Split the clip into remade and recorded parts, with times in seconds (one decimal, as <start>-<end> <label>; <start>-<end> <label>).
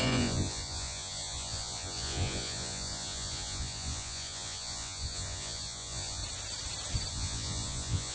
0.0-6.2 remade; 6.2-7.1 recorded; 7.1-8.1 remade